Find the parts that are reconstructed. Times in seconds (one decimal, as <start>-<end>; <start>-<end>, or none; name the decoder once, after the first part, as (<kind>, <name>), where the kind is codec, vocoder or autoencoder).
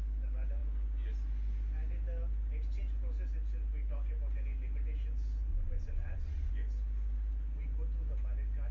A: 5.5-6.5 (vocoder, Vocos)